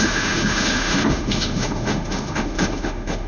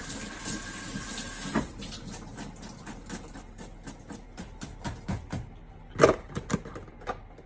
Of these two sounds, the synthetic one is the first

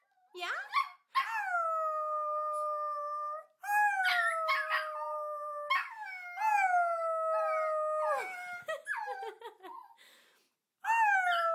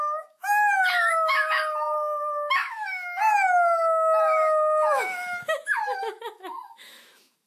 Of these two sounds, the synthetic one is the second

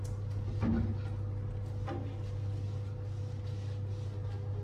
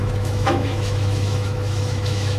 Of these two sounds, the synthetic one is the second